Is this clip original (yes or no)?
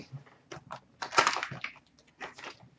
yes